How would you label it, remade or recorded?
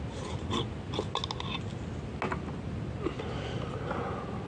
recorded